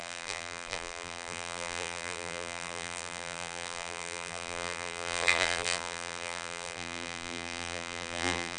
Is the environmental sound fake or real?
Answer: fake